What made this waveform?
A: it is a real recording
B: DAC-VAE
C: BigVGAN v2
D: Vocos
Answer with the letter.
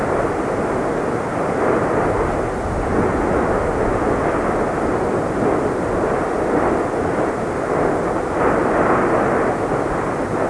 A